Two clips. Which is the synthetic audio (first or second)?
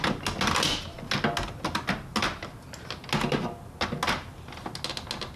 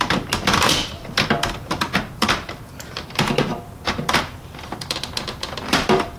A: second